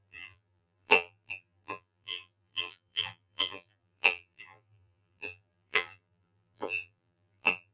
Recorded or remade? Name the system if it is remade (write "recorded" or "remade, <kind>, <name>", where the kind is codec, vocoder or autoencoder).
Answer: remade, vocoder, BigVGAN v2